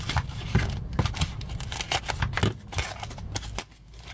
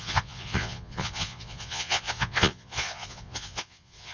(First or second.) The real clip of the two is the first